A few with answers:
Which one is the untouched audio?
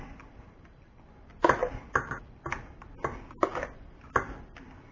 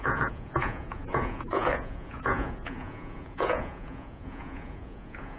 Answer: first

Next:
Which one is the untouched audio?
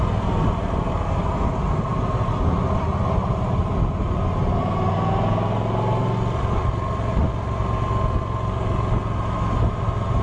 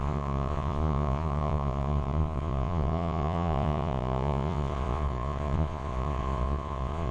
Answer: first